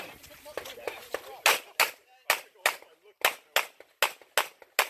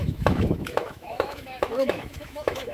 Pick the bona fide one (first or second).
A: first